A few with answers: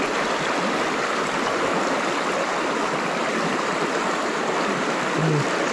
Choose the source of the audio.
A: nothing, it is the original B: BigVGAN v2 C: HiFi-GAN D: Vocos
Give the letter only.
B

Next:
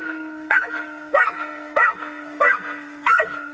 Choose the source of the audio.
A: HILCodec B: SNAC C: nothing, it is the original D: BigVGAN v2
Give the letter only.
B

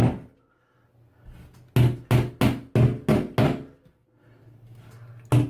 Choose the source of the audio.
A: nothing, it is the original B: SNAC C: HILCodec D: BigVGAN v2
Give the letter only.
A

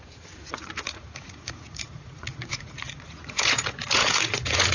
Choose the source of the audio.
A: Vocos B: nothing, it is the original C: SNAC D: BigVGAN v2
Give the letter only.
A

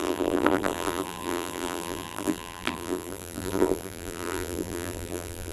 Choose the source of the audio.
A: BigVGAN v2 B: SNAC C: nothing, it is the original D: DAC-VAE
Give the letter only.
A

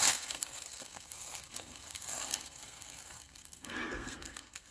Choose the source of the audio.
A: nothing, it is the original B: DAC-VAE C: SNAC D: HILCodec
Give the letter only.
C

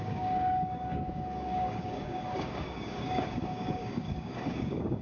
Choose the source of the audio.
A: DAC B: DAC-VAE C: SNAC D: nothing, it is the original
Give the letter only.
A